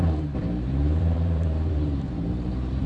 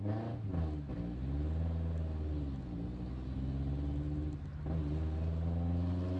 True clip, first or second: second